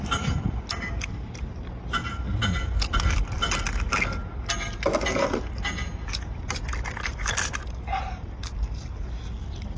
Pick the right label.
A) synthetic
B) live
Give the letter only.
B